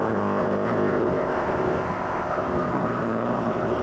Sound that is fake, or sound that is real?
fake